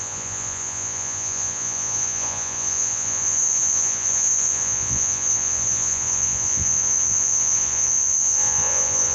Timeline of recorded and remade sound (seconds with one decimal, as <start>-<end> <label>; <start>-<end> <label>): 0.0-9.1 remade